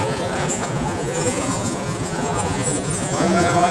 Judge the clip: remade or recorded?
remade